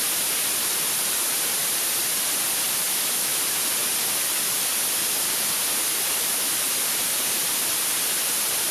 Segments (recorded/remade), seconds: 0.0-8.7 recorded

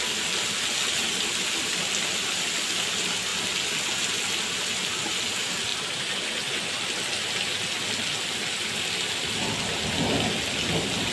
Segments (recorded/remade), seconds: 0.0-5.7 recorded; 5.7-6.7 remade; 6.7-11.1 recorded

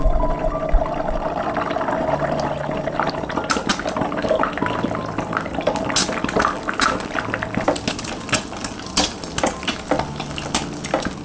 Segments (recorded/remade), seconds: 0.0-11.2 recorded

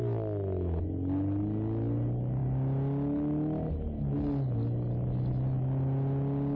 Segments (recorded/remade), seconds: 0.0-6.6 recorded